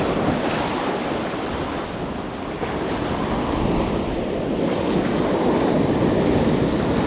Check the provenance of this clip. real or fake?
real